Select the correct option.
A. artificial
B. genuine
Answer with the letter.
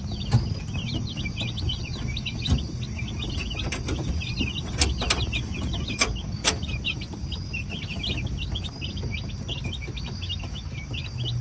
B